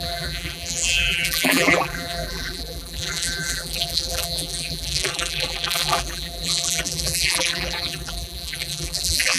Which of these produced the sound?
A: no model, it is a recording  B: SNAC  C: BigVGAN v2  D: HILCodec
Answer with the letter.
C